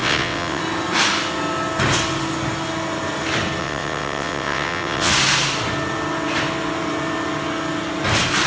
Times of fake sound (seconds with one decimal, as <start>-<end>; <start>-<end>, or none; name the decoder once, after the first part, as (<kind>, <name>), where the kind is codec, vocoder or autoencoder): 0.0-0.6 (vocoder, WaveNeXt); 3.6-5.1